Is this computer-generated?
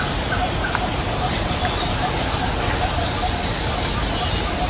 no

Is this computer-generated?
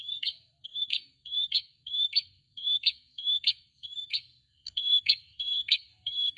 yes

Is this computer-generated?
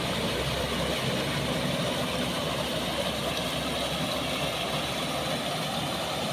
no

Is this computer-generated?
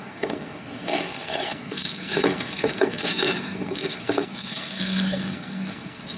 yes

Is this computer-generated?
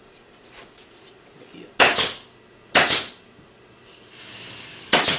no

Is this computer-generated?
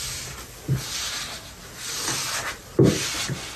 no